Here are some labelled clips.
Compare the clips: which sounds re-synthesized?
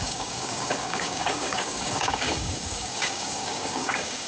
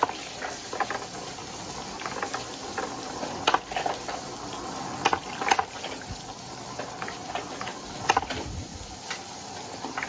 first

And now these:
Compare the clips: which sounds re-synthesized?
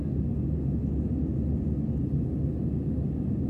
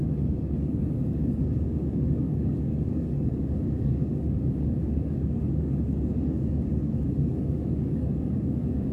second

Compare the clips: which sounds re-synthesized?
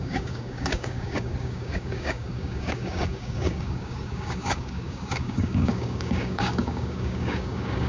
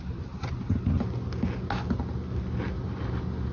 first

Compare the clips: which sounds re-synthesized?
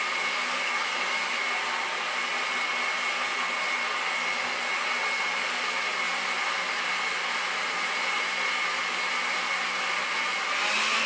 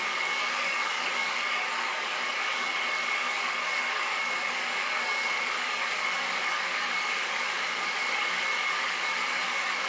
second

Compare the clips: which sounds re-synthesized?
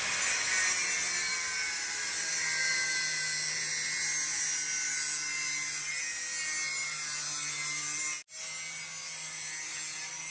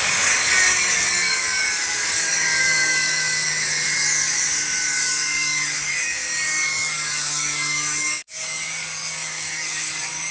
second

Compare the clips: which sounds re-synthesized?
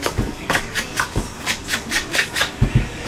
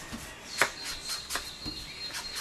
first